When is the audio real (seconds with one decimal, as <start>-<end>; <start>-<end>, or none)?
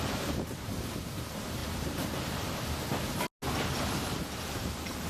1.6-3.9